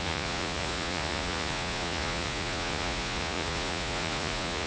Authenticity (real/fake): fake